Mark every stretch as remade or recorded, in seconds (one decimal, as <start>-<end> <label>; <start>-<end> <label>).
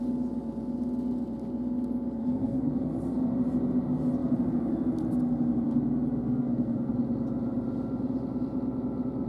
0.0-2.2 recorded; 2.2-2.7 remade; 2.7-6.2 recorded; 6.2-6.9 remade; 6.9-9.3 recorded